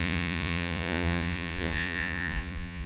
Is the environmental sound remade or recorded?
remade